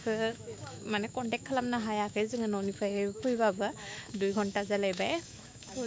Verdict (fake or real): fake